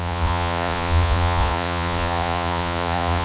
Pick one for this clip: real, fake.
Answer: fake